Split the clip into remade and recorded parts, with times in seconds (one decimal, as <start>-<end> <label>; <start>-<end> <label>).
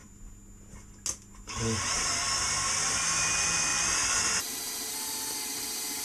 0.0-3.7 recorded; 3.7-4.4 remade; 4.4-6.0 recorded